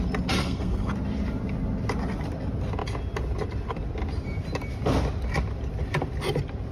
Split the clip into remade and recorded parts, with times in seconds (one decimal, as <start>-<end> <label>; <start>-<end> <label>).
0.0-0.4 recorded; 0.4-0.9 remade; 0.9-6.7 recorded